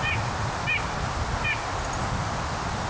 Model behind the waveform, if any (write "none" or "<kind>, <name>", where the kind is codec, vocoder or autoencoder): none